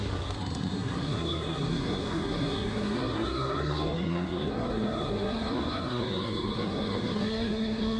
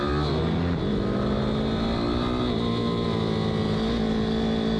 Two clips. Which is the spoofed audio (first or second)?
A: first